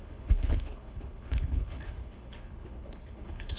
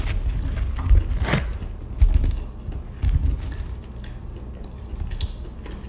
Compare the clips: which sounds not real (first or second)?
first